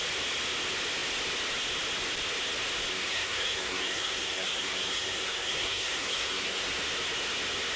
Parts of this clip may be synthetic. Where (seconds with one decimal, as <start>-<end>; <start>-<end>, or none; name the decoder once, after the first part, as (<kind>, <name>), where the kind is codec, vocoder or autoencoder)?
2.9-6.7 (codec, SNAC)